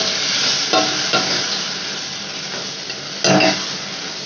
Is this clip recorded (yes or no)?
yes